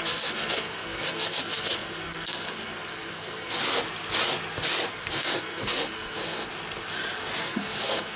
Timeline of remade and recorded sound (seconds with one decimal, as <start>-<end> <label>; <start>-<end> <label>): 0.0-3.6 remade; 3.6-4.9 recorded; 4.9-6.5 remade; 6.5-7.4 recorded; 7.4-8.2 remade